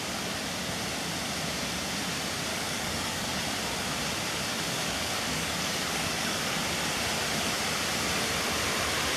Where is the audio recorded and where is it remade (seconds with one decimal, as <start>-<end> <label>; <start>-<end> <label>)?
0.0-2.5 recorded; 2.5-3.4 remade; 3.4-4.5 recorded; 4.5-6.6 remade; 6.6-9.2 recorded